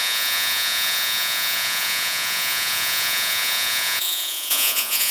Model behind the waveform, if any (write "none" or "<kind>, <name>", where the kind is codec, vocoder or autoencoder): vocoder, Vocos